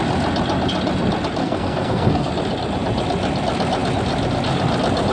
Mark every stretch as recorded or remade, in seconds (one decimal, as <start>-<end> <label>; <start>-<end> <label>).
0.0-1.4 recorded; 1.4-2.3 remade; 2.3-5.1 recorded